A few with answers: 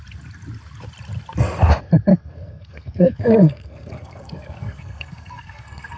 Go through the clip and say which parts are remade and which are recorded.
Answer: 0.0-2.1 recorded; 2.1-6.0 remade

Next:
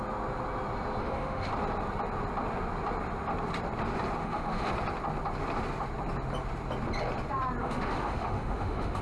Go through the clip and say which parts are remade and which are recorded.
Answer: 0.0-1.0 recorded; 1.0-1.5 remade; 1.5-4.2 recorded; 4.2-4.7 remade; 4.7-7.6 recorded; 7.6-9.0 remade

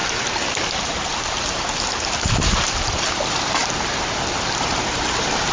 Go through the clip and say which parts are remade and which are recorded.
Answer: 0.0-0.7 recorded; 0.7-3.6 remade; 3.6-4.5 recorded; 4.5-5.5 remade

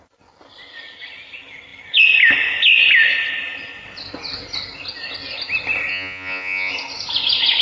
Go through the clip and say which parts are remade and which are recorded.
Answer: 0.0-5.9 recorded; 5.9-6.7 remade; 6.7-7.6 recorded

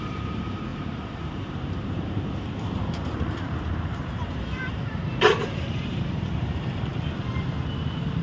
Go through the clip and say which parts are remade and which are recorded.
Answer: 0.0-6.9 remade; 6.9-8.2 recorded

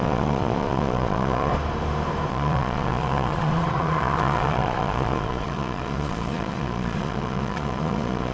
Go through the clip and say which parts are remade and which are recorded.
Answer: 0.0-1.5 remade; 1.5-2.3 recorded; 2.3-8.3 remade

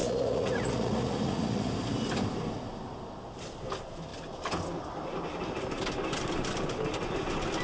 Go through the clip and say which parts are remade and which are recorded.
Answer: 0.0-1.7 remade; 1.7-7.6 recorded